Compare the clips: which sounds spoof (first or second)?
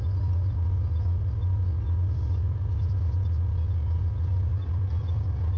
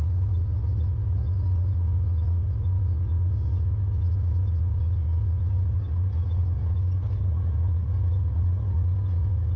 first